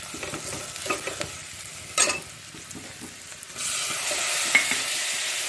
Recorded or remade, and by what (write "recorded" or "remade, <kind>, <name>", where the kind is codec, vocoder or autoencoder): recorded